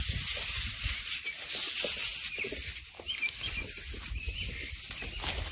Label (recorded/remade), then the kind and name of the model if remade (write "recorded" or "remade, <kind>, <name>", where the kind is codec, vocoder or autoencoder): recorded